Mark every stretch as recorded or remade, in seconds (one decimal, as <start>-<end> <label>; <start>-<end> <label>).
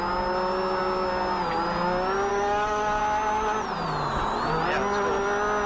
0.0-2.3 recorded; 2.3-3.0 remade; 3.0-5.7 recorded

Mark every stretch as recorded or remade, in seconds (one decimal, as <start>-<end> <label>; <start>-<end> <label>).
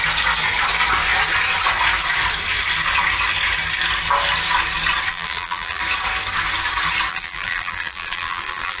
0.0-5.1 recorded; 5.1-5.8 remade; 5.8-7.1 recorded; 7.1-8.8 remade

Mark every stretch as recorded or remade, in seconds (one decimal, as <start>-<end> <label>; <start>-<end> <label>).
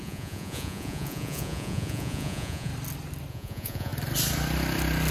0.0-2.7 remade; 2.7-3.3 recorded; 3.3-3.9 remade; 3.9-5.1 recorded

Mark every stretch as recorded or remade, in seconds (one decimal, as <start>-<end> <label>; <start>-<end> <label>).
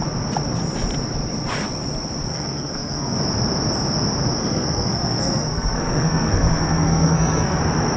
0.0-2.3 recorded; 2.3-3.2 remade; 3.2-4.4 recorded; 4.4-7.6 remade; 7.6-8.0 recorded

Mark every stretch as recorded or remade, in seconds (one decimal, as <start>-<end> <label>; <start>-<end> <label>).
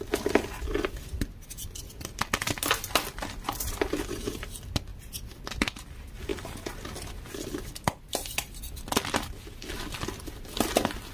0.0-11.1 recorded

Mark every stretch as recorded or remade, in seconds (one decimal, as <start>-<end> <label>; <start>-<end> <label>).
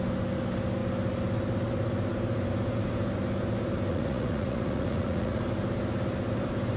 0.0-3.9 recorded; 3.9-5.4 remade; 5.4-6.8 recorded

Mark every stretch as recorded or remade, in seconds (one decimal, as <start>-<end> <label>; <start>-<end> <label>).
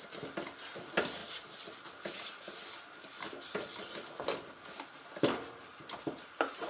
0.0-6.7 recorded